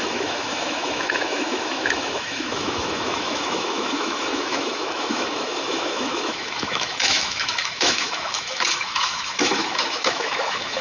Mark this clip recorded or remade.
remade